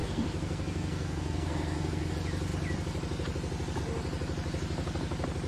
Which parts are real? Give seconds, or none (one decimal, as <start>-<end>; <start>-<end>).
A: 2.1-5.5